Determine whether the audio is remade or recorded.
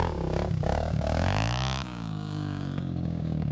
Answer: remade